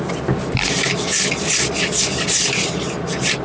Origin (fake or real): real